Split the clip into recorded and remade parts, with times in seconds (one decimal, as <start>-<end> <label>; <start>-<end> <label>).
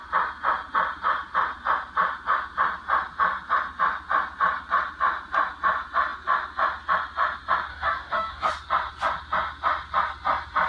0.0-7.7 recorded; 7.7-8.5 remade; 8.5-10.7 recorded